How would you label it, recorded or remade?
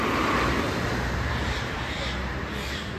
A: recorded